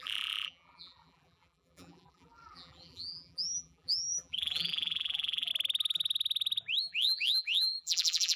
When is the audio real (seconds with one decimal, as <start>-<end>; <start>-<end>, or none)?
5.5-6.8